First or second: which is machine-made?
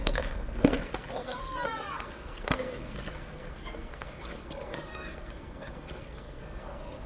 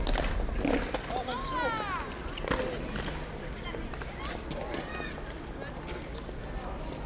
first